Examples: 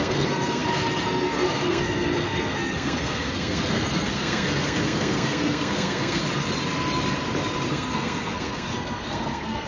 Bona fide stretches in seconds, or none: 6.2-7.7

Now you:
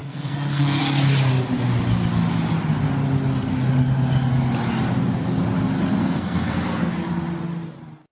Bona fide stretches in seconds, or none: 0.8-6.0; 6.9-8.1

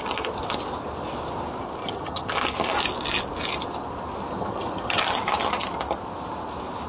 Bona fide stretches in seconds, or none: 0.0-1.8; 2.3-4.3; 5.0-6.9

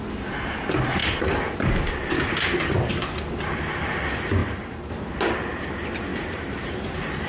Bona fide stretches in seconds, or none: 0.0-4.4; 4.9-6.1